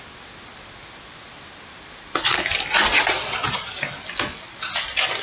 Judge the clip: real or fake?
real